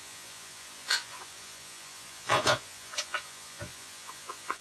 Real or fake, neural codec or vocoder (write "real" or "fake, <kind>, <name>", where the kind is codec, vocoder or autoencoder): fake, vocoder, Vocos